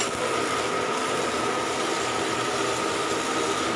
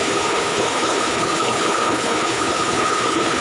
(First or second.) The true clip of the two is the first